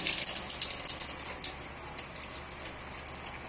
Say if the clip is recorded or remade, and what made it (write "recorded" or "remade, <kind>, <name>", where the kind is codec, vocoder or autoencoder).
recorded